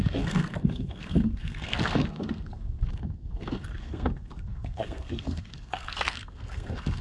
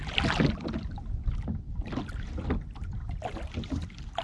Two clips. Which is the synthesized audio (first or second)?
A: first